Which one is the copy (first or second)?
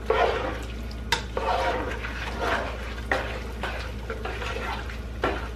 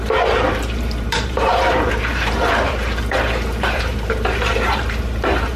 second